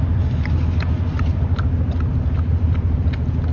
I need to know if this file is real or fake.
real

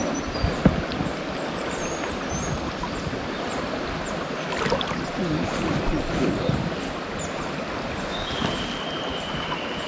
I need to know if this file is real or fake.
real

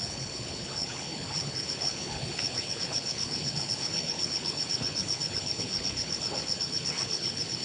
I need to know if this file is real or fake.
fake